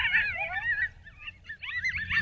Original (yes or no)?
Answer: yes